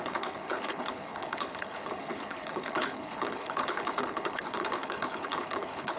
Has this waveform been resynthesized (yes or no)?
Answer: yes